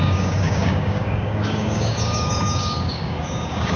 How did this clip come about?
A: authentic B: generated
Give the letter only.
B